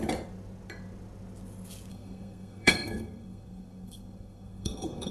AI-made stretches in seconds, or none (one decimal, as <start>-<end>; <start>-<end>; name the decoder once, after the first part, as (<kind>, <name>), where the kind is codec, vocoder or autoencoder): 1.9-5.1 (codec, SNAC)